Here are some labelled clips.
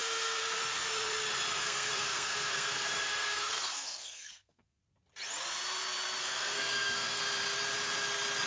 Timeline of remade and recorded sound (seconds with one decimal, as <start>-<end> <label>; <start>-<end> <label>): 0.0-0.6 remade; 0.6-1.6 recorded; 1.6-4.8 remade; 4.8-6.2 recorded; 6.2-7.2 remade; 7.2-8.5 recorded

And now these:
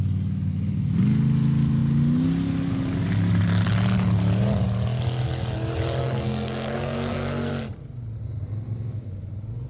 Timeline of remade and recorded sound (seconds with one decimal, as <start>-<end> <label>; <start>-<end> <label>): 0.0-6.0 recorded; 6.0-7.5 remade; 7.5-9.7 recorded

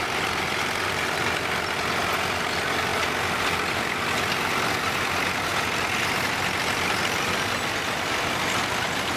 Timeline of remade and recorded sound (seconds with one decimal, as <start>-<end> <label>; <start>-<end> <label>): 0.0-9.2 recorded

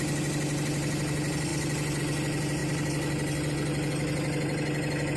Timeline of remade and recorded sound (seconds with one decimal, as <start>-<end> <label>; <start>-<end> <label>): 0.0-5.2 recorded